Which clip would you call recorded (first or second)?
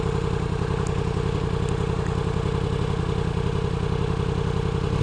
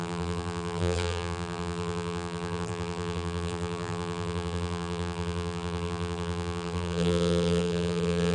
first